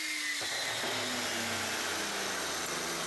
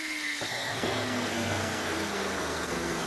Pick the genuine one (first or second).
first